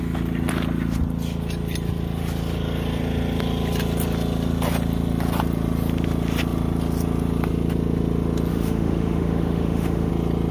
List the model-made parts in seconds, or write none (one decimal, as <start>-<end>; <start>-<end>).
8.5-10.1